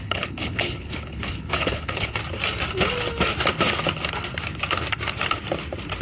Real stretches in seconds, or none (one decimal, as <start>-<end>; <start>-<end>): 2.2-6.0